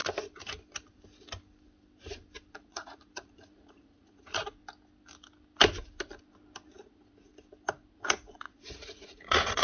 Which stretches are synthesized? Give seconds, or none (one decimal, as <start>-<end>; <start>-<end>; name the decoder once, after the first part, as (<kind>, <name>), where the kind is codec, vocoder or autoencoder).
2.5-4.6 (vocoder, Vocos); 6.7-7.3; 7.9-9.6